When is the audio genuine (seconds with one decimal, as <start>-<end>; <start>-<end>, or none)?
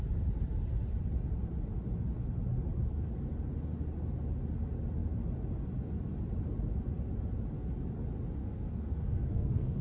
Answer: 0.0-8.4